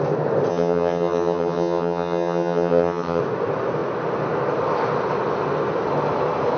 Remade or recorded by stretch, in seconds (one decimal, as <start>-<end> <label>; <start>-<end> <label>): 0.0-0.5 recorded; 0.5-3.2 remade; 3.2-6.6 recorded